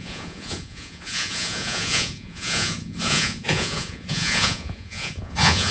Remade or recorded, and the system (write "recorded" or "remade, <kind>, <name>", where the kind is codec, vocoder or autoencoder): remade, vocoder, Vocos